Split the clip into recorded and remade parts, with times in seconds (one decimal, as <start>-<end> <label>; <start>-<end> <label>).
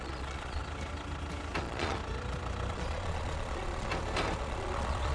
0.0-0.6 remade; 0.6-1.6 recorded; 1.6-2.0 remade; 2.0-2.7 recorded; 2.7-3.9 remade; 3.9-4.4 recorded; 4.4-5.1 remade